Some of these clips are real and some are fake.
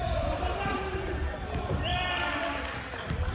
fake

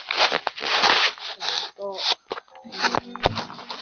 real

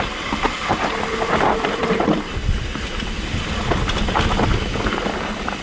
fake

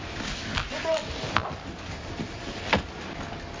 real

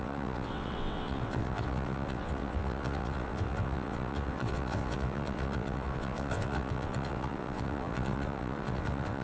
fake